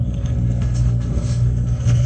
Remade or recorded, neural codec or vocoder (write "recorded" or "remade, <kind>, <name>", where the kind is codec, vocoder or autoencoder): remade, codec, SNAC